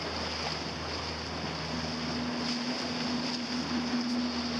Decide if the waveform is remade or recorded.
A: recorded